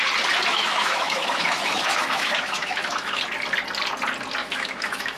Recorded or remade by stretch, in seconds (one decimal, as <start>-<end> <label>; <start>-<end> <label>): 0.0-0.5 recorded; 0.5-3.2 remade; 3.2-4.4 recorded; 4.4-5.2 remade